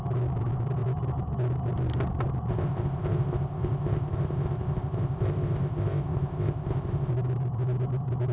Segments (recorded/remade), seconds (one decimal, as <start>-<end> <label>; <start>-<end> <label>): 0.0-2.5 recorded; 2.5-7.1 remade; 7.1-8.3 recorded